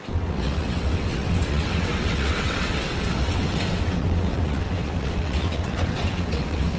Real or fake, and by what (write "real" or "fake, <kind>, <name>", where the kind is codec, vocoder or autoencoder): fake, vocoder, WaveNeXt